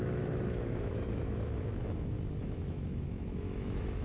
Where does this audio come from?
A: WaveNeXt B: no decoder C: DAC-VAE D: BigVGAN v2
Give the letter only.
C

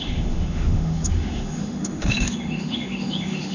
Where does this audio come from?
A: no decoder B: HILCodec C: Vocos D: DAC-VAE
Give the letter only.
D